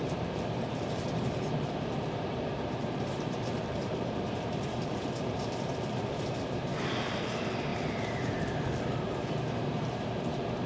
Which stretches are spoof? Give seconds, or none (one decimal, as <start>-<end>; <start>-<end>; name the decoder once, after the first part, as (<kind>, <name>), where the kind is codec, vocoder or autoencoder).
0.0-10.7 (vocoder, BigVGAN v2)